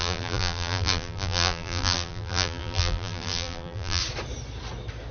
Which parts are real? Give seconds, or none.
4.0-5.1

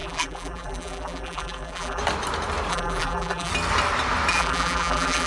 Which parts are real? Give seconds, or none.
2.0-2.7; 3.5-4.3

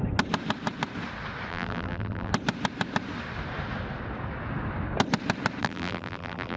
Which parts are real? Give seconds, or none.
0.0-1.5; 2.3-5.6

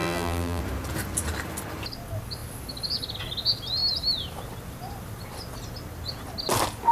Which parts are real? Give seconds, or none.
0.6-6.9